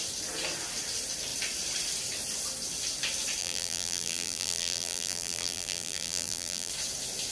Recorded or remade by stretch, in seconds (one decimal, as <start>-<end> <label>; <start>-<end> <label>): 0.0-3.4 recorded; 3.4-6.7 remade; 6.7-7.3 recorded